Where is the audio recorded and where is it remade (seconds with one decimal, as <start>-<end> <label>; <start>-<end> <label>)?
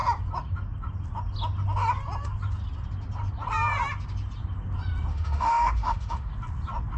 0.0-5.1 recorded; 5.1-6.3 remade; 6.3-7.0 recorded